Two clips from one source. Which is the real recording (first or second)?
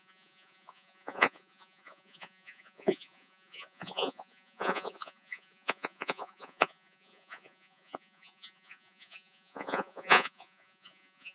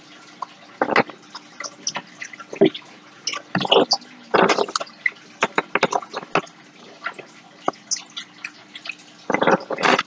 second